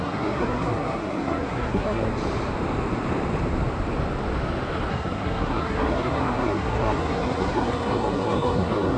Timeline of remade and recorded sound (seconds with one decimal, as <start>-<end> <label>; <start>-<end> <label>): 0.0-2.0 remade; 2.0-4.9 recorded; 4.9-9.0 remade